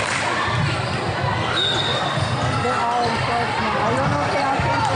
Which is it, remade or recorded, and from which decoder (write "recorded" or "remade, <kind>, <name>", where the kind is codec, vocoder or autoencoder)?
recorded